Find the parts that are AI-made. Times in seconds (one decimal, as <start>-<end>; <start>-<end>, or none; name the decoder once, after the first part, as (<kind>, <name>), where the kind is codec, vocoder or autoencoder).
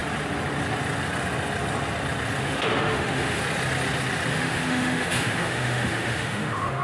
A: 2.4-3.4 (autoencoder, DAC-VAE); 4.3-6.8